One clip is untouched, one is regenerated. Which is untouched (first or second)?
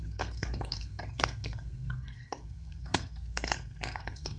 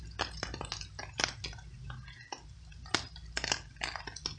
second